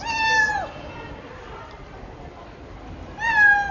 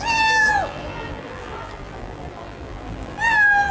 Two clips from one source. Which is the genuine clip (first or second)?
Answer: first